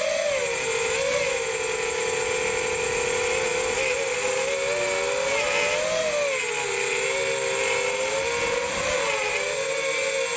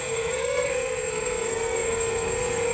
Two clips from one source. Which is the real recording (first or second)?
first